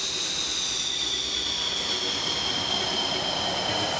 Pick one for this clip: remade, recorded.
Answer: recorded